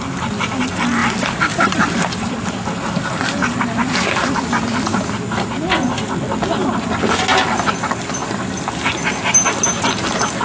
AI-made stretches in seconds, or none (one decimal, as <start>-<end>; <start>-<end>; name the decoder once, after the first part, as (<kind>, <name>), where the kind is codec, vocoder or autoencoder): 1.0-4.4 (vocoder, BigVGAN v2); 8.2-9.0

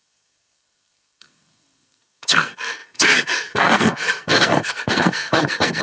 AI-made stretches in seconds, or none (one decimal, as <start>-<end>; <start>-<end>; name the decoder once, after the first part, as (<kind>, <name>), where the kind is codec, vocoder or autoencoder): 0.0-5.8 (codec, SNAC)

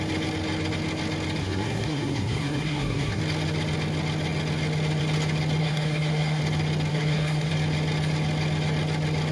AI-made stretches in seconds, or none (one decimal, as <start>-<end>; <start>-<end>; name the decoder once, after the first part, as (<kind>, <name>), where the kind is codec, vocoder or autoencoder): 1.4-3.2 (codec, SNAC); 5.6-6.4; 6.9-7.5

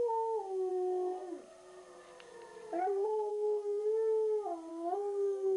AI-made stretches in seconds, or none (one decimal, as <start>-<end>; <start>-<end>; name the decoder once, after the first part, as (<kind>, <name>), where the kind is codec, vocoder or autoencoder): 3.3-3.8 (codec, SNAC); 4.7-5.6

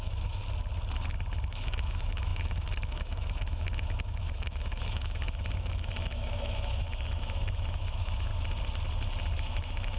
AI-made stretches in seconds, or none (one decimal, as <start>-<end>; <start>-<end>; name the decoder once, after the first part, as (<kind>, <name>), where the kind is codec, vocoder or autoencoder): 0.0-0.4 (autoencoder, DAC-VAE); 1.5-8.3; 9.4-10.0

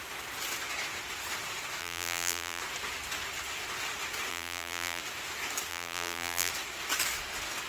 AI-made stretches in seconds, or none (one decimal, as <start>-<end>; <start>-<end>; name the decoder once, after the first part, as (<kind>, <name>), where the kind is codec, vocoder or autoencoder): 1.8-2.6 (vocoder, BigVGAN v2); 4.3-5.0; 5.7-6.5

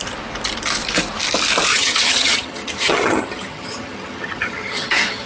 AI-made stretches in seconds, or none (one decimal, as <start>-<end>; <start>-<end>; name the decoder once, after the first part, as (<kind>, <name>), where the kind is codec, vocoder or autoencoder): 1.7-5.3 (vocoder, HiFi-GAN)

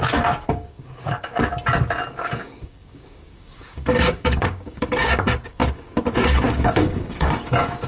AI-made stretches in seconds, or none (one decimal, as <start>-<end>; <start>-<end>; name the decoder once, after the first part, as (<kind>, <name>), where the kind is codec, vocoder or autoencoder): 0.5-1.5 (codec, DAC); 2.1-7.9